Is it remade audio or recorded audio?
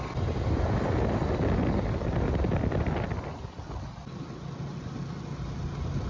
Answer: recorded